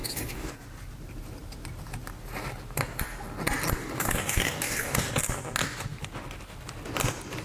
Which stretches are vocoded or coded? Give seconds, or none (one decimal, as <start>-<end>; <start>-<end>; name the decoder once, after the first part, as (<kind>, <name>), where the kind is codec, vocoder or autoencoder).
0.0-0.5 (codec, DAC); 3.8-5.1